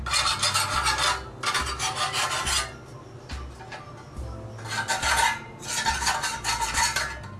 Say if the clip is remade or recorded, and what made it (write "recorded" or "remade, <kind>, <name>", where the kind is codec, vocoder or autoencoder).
recorded